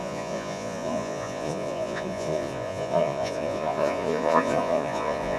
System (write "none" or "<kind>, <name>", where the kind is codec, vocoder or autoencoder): vocoder, Vocos